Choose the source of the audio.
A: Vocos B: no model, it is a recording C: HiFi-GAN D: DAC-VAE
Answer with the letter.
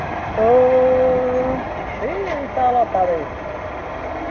B